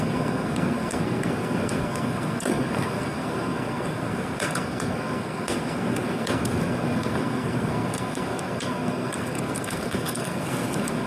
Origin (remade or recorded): remade